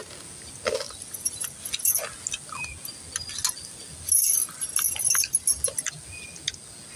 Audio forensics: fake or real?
real